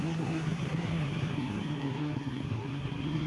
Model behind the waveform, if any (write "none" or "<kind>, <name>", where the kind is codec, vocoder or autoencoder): codec, SNAC